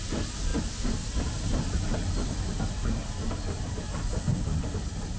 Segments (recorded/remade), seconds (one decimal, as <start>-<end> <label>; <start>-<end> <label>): 0.0-5.2 recorded